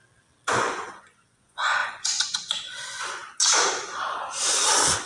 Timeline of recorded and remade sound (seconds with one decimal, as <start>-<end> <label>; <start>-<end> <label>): 0.0-0.5 recorded; 0.5-3.2 remade; 3.2-5.0 recorded